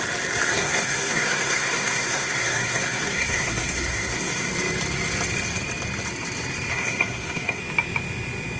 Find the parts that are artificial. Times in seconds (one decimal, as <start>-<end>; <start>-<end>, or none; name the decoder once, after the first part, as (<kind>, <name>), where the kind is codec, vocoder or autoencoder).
0.5-4.5 (codec, SNAC); 6.7-7.6